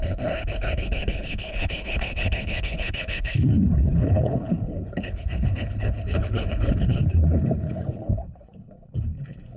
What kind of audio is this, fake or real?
fake